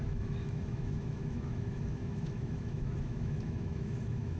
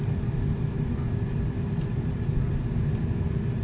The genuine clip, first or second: second